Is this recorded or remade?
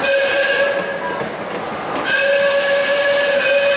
recorded